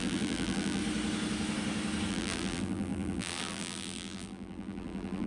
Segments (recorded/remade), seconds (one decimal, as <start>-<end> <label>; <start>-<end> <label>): 0.0-0.8 remade; 0.8-2.1 recorded; 2.1-5.3 remade